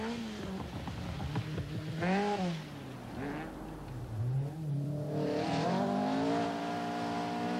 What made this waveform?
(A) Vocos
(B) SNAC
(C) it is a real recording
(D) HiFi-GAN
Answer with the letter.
C